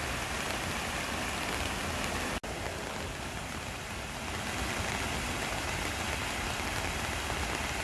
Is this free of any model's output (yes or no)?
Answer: yes